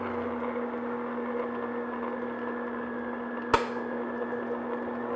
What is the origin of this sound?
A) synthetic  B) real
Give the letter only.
B